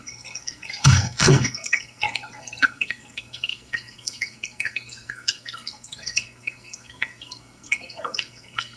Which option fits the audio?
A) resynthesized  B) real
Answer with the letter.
A